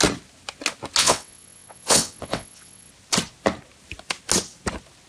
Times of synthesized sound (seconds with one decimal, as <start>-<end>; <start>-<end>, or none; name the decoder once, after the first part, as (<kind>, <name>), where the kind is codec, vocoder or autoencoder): 1.0-2.9 (vocoder, WaveNeXt)